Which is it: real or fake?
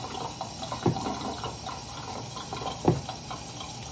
real